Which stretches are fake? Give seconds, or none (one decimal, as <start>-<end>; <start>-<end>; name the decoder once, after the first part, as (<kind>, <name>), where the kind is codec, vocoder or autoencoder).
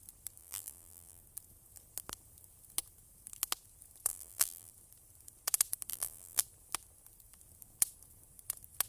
0.4-1.2 (vocoder, BigVGAN v2); 4.1-4.7; 5.9-6.4